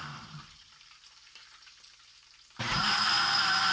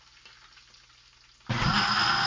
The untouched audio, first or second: second